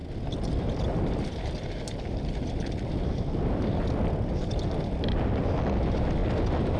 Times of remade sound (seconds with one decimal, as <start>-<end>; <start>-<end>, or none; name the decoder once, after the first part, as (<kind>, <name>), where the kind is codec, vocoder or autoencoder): none